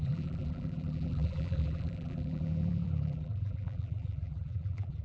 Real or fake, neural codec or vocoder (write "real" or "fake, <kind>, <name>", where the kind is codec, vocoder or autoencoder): fake, vocoder, BigVGAN v2